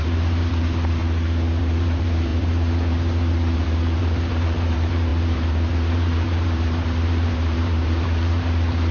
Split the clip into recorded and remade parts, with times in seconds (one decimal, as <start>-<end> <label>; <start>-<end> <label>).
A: 0.0-1.0 remade; 1.0-1.6 recorded; 1.6-8.9 remade